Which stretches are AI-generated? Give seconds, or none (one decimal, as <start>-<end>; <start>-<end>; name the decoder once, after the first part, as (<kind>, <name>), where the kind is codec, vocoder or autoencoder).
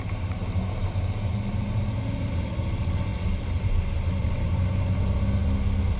none